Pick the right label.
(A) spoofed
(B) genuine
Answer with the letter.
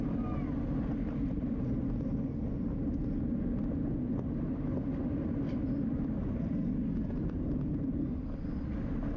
B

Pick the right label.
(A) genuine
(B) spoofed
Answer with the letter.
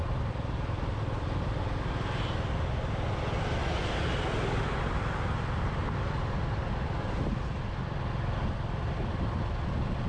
A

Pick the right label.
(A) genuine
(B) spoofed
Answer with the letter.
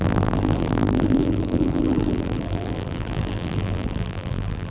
B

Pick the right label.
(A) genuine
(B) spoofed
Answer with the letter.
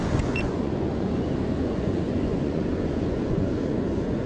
B